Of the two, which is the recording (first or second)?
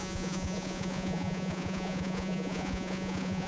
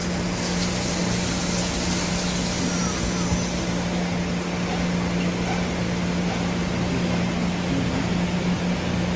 second